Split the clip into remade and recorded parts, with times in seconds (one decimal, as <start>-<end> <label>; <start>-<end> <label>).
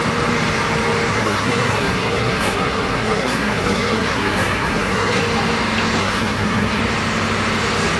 0.0-1.1 recorded; 1.1-5.2 remade; 5.2-6.0 recorded; 6.0-6.8 remade; 6.8-8.0 recorded